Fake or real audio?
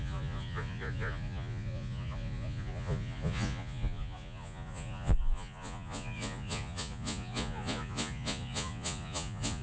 fake